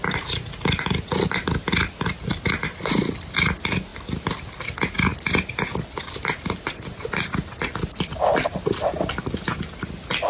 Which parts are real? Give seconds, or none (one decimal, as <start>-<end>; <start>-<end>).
0.0-10.3